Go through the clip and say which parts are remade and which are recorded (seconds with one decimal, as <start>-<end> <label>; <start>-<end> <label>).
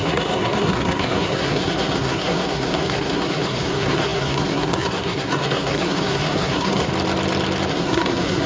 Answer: 0.0-6.9 remade; 6.9-7.7 recorded; 7.7-8.5 remade